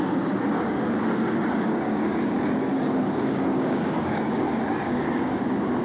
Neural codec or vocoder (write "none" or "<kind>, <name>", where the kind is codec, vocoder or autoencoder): codec, DAC